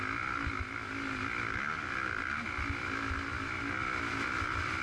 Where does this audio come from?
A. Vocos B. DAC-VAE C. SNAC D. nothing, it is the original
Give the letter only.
D